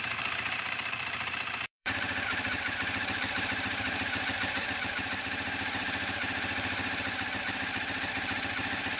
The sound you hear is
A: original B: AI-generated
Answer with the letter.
B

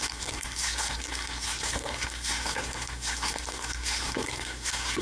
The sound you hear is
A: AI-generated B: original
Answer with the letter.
A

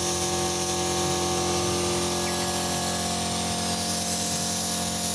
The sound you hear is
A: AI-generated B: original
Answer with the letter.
B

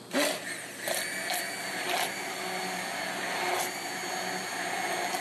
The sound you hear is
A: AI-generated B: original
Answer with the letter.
B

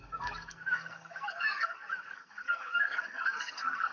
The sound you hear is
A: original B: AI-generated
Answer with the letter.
B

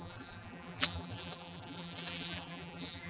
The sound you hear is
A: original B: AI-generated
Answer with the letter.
B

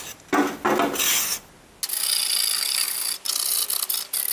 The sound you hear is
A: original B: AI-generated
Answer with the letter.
A